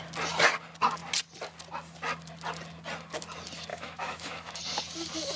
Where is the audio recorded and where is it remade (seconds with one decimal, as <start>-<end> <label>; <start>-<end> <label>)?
0.0-3.7 recorded; 3.7-4.6 remade; 4.6-5.4 recorded